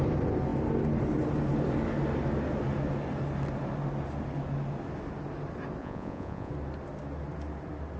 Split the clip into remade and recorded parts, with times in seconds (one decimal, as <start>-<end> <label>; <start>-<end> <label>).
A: 0.0-5.8 recorded; 5.8-6.5 remade; 6.5-8.0 recorded